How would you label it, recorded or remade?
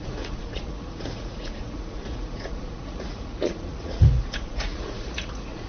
remade